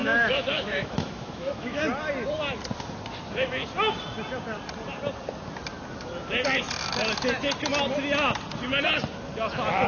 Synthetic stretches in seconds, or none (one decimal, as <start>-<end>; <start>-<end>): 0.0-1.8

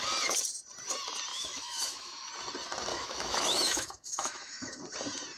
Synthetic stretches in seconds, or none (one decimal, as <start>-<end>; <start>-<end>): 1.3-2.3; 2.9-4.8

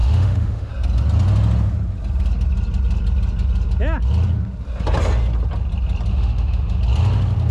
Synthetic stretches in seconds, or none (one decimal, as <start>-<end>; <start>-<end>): 0.0-0.7; 6.1-6.8

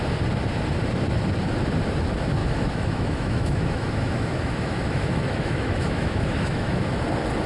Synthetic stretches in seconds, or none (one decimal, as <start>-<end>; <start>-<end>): 2.4-6.9

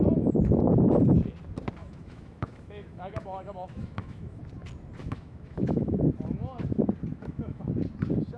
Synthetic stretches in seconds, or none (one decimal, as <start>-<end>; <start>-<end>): 1.8-4.4; 5.0-6.0; 7.1-7.6